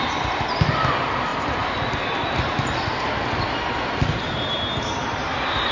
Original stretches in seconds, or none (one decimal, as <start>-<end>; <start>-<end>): none